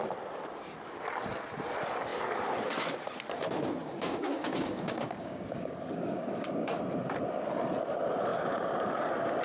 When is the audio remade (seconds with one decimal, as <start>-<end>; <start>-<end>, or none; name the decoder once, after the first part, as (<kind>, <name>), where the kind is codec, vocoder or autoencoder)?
3.8-6.8 (codec, DAC)

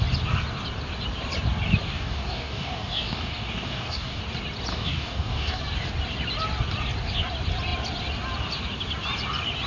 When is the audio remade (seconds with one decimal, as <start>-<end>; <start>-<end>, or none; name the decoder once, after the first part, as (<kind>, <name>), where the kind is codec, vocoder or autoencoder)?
1.9-4.2 (codec, DAC); 4.7-5.6

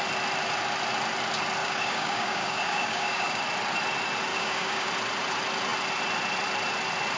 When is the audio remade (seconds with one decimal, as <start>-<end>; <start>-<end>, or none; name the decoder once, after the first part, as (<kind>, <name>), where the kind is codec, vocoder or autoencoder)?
1.6-3.4 (codec, DAC); 4.3-4.9

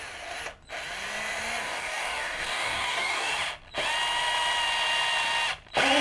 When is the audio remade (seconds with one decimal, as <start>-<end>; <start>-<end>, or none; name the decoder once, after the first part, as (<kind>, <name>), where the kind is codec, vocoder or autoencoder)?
1.6-3.3 (codec, DAC)